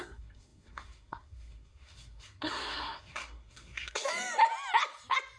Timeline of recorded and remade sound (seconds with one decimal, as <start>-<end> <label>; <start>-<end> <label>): 0.0-4.1 remade; 4.1-5.4 recorded